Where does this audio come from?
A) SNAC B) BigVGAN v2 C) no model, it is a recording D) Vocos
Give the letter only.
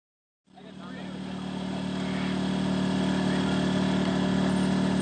C